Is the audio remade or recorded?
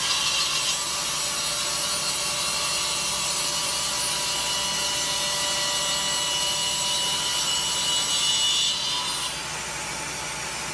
recorded